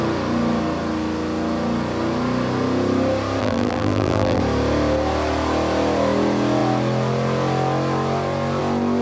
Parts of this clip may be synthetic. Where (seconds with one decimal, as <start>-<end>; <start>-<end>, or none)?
3.4-4.4